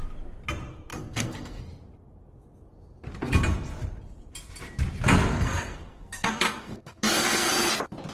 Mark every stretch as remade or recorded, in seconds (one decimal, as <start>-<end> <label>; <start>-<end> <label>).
0.0-0.9 recorded; 0.9-1.6 remade; 1.6-5.3 recorded; 5.3-7.5 remade; 7.5-8.1 recorded